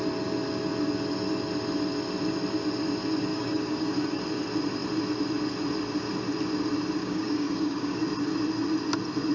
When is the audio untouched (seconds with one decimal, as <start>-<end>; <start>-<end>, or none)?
0.0-3.3; 4.2-7.0; 8.0-9.3